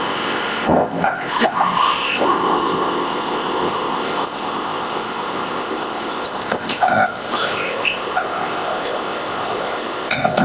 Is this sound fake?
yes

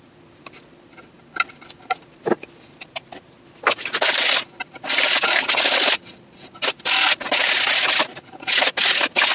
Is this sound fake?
no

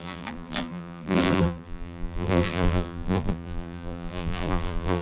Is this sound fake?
yes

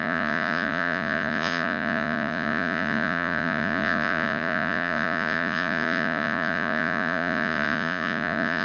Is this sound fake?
yes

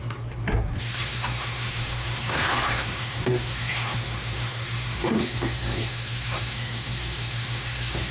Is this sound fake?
yes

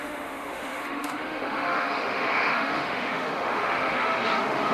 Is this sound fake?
yes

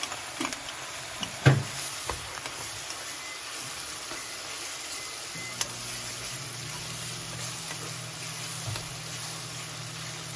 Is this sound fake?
no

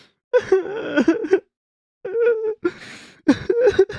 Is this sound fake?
no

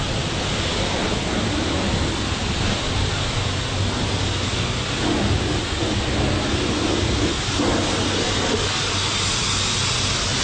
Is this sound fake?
no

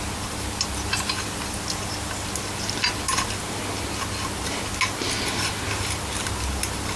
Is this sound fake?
no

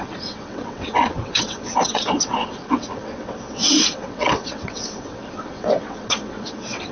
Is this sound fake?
yes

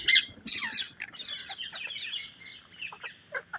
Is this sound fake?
no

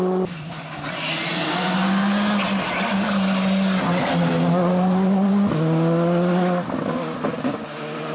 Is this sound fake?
no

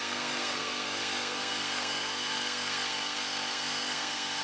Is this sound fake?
yes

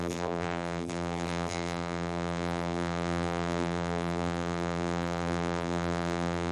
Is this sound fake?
yes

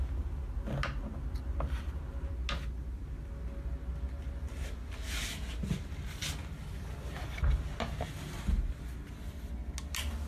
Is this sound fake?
no